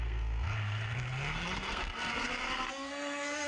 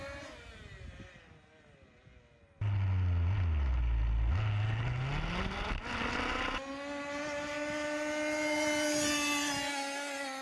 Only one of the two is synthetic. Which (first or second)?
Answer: first